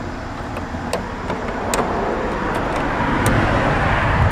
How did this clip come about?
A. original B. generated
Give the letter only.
A